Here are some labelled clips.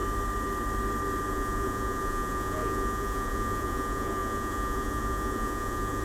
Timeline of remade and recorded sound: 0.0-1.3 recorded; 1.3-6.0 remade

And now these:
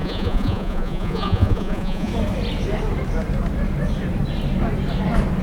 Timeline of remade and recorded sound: 0.0-2.1 remade; 2.1-5.4 recorded

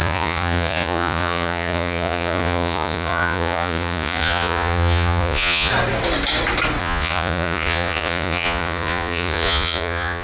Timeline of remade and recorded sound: 0.0-5.7 remade; 5.7-6.8 recorded; 6.8-10.2 remade

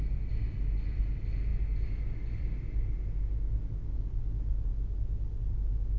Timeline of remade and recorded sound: 0.0-6.0 recorded

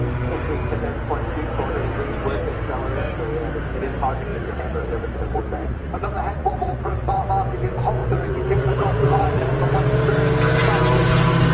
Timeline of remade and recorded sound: 0.0-4.3 recorded; 4.3-7.3 remade; 7.3-8.0 recorded; 8.0-9.5 remade; 9.5-11.5 recorded

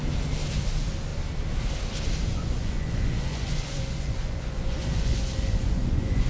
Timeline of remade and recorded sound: 0.0-2.3 recorded; 2.3-6.3 remade

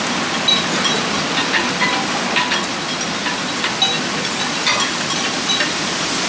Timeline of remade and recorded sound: 0.0-6.3 recorded

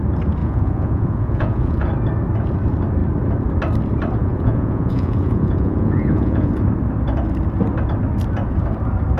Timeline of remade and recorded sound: 0.0-0.4 recorded; 0.4-1.9 remade; 1.9-4.2 recorded; 4.2-6.5 remade; 6.5-9.2 recorded